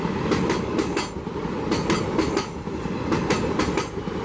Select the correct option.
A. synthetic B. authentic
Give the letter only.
B